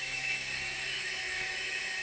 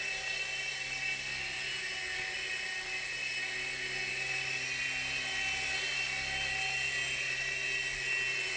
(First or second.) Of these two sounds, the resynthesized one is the first